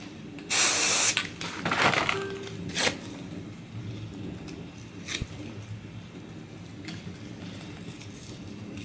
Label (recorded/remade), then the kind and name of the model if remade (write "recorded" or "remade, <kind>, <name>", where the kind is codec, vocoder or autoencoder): recorded